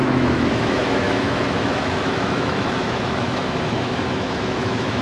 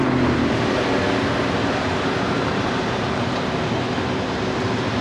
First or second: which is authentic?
second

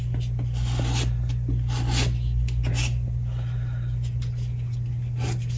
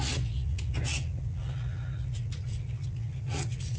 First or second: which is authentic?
first